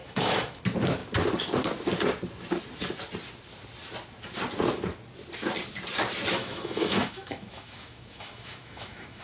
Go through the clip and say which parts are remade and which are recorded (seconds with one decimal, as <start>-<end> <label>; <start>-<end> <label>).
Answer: 0.0-0.6 remade; 0.6-6.4 recorded; 6.4-9.2 remade